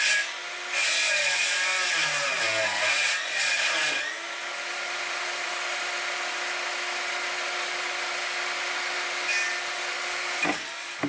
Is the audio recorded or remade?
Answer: recorded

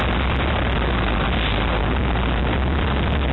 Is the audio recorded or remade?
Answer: recorded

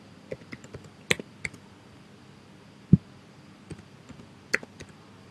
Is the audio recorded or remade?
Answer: recorded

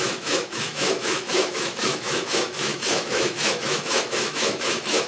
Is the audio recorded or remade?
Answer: remade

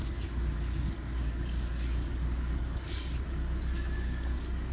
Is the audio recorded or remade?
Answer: remade